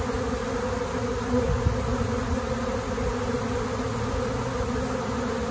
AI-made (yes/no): no